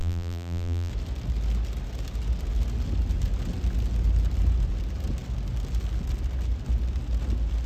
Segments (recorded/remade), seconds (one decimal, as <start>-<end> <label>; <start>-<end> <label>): 0.0-0.9 remade; 0.9-7.7 recorded